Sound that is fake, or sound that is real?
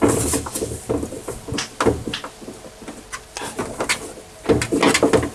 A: real